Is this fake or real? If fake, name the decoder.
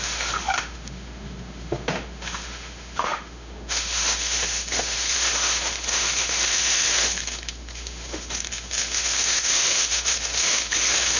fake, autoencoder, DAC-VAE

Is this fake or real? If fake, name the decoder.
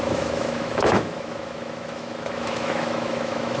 fake, autoencoder, DAC-VAE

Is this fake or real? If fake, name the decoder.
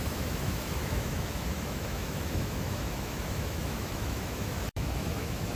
fake, autoencoder, DAC-VAE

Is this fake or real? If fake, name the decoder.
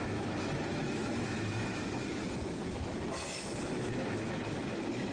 fake, autoencoder, DAC-VAE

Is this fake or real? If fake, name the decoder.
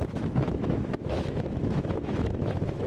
fake, autoencoder, DAC-VAE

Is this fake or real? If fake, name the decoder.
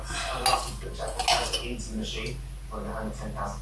real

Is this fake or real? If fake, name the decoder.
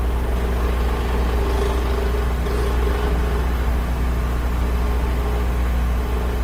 real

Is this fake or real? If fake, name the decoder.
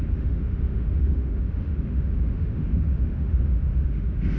fake, autoencoder, DAC-VAE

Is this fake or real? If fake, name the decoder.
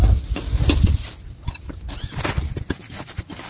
real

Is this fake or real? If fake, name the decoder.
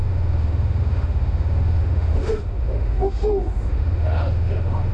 fake, autoencoder, DAC-VAE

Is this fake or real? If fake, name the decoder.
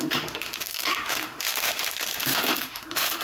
fake, autoencoder, DAC-VAE